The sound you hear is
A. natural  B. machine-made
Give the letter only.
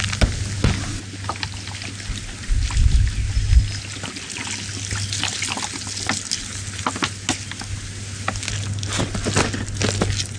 A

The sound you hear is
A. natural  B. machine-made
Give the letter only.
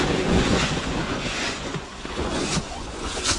B